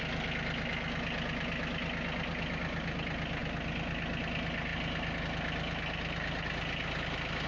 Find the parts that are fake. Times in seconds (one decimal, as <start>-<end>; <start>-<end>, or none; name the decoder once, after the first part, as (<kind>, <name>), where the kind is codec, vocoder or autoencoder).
none